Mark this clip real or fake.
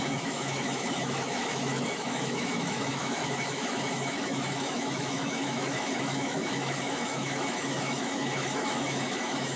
fake